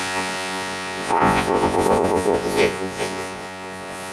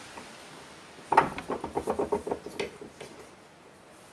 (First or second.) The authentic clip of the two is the second